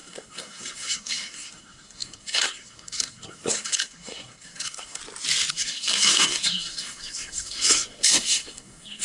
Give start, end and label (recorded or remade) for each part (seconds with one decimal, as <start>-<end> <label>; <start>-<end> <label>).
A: 0.0-5.0 remade; 5.0-5.5 recorded; 5.5-9.0 remade